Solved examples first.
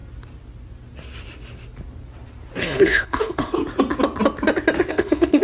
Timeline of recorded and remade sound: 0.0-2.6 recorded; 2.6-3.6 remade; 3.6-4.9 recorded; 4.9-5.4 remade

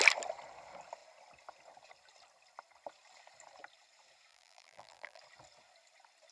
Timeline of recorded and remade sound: 0.0-4.3 recorded; 4.3-5.2 remade; 5.2-6.3 recorded

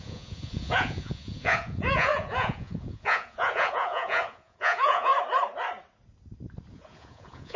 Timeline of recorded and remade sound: 0.0-5.1 remade; 5.1-6.7 recorded; 6.7-7.6 remade

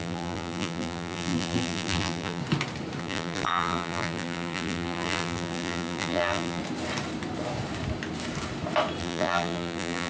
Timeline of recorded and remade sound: 0.0-2.4 remade; 2.4-3.0 recorded; 3.0-6.6 remade; 6.6-9.0 recorded; 9.0-10.1 remade

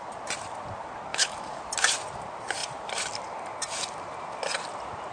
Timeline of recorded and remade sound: 0.0-1.1 recorded; 1.1-1.6 remade; 1.6-5.1 recorded